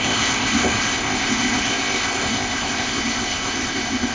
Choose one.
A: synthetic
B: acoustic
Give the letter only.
A